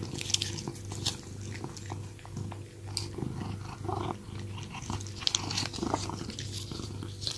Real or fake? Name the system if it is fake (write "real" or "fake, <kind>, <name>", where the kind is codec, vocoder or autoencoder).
real